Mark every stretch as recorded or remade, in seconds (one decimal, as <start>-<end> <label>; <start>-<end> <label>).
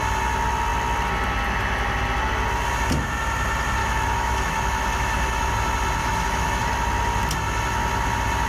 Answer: 0.0-3.8 recorded; 3.8-5.5 remade; 5.5-6.0 recorded; 6.0-6.6 remade; 6.6-8.5 recorded